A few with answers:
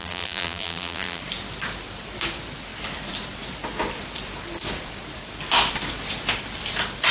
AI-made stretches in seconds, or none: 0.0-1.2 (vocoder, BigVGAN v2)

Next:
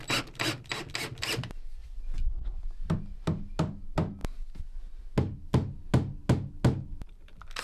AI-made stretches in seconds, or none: 1.8-2.6 (vocoder, BigVGAN v2)

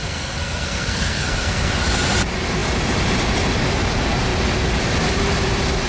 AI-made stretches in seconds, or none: 0.0-1.7 (codec, SNAC)

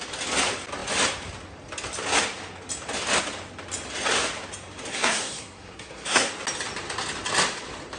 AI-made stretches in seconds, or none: 4.9-6.3 (codec, SNAC)